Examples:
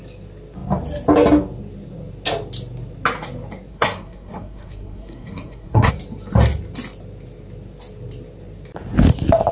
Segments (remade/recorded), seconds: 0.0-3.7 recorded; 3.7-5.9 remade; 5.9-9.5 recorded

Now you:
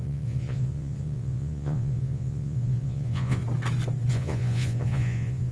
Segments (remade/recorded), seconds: 0.0-3.4 remade; 3.4-4.1 recorded; 4.1-5.5 remade

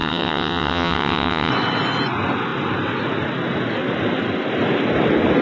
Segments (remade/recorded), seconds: 0.0-1.5 remade; 1.5-5.4 recorded

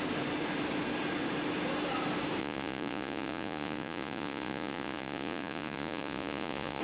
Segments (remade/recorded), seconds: 0.0-2.4 recorded; 2.4-6.8 remade

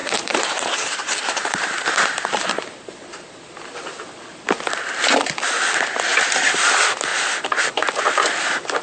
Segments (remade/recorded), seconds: 0.0-2.8 remade; 2.8-6.1 recorded; 6.1-6.6 remade; 6.6-7.1 recorded; 7.1-8.0 remade; 8.0-8.8 recorded